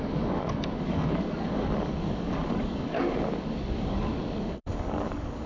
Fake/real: fake